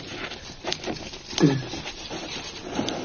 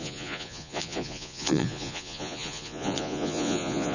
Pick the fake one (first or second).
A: second